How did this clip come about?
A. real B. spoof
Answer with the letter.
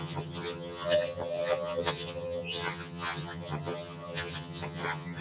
B